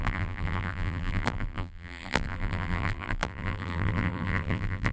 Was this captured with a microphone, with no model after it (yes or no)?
no